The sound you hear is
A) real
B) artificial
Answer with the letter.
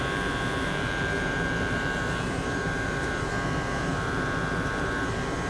B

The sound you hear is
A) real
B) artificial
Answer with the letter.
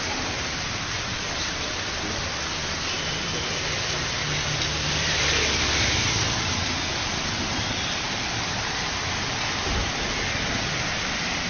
B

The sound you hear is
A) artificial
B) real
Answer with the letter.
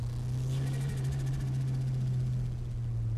B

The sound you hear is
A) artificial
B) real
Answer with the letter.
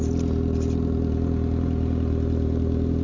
B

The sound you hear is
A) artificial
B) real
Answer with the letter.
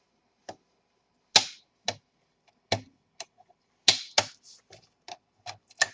B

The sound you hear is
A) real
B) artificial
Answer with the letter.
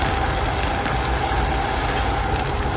A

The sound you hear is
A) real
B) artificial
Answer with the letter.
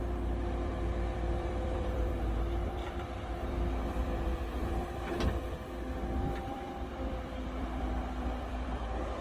B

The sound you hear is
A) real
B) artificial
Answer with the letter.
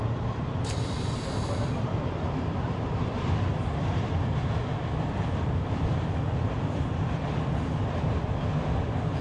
B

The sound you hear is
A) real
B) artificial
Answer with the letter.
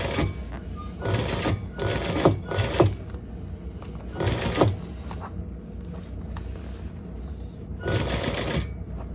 A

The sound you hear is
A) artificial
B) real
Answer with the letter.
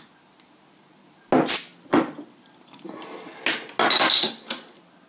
B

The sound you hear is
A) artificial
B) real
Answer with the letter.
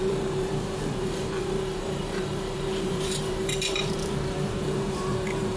A